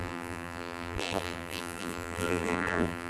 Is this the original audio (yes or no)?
no